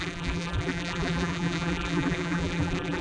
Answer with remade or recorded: remade